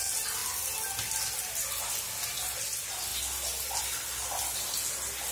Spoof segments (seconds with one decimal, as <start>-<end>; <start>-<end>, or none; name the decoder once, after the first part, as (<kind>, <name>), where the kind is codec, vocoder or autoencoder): none